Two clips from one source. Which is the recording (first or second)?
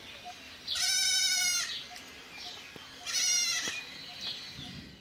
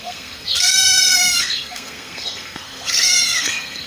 first